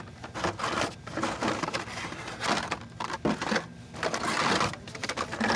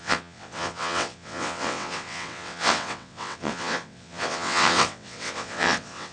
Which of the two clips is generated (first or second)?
second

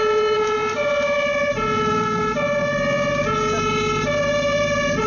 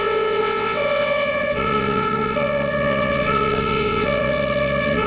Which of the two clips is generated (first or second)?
second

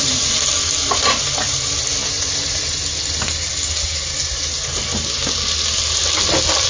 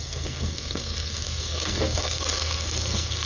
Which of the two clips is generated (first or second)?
second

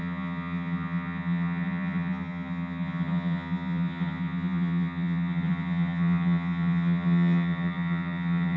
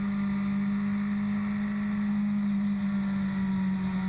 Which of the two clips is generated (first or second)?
first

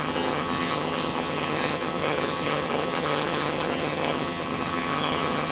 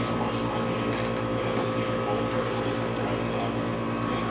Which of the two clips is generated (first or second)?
first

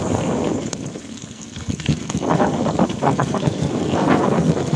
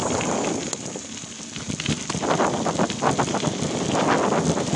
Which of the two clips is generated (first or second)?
first